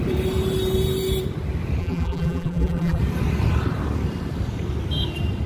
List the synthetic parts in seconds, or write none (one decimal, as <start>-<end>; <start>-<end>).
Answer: 1.8-3.0